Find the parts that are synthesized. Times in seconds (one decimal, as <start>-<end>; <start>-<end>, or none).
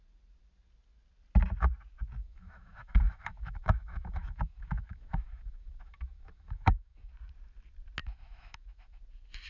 2.2-7.1; 8.0-9.0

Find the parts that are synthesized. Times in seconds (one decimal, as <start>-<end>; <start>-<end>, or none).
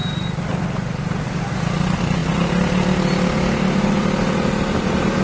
none